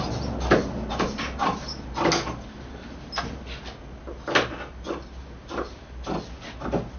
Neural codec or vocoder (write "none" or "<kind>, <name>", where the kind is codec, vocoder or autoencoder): none